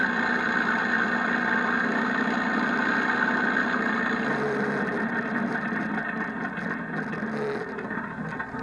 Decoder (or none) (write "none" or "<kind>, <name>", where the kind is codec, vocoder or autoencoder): none